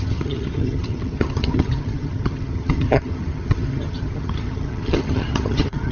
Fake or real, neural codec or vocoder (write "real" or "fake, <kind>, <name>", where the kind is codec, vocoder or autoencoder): fake, vocoder, HiFi-GAN